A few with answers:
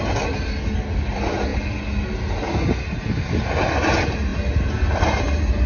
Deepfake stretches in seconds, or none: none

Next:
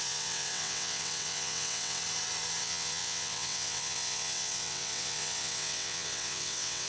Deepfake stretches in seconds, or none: 0.0-2.0 (vocoder, WaveNeXt); 2.6-6.9

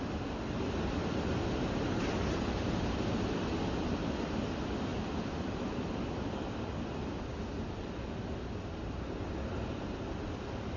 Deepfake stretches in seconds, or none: none

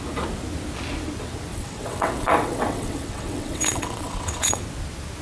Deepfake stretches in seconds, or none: 1.5-4.6 (vocoder, WaveNeXt)

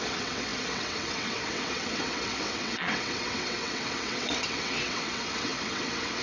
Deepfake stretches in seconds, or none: 0.0-6.2 (vocoder, WaveNeXt)

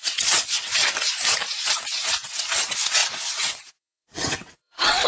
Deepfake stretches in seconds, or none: 0.0-0.8 (vocoder, WaveNeXt); 1.7-5.1

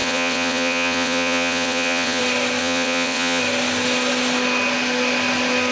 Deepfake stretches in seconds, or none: 0.0-2.2 (vocoder, WaveNeXt); 2.6-3.4

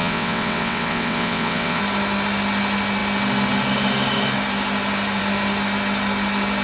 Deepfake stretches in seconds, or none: 0.0-1.8 (vocoder, WaveNeXt)